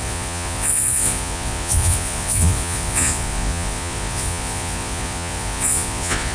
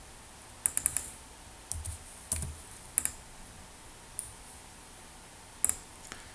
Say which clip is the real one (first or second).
second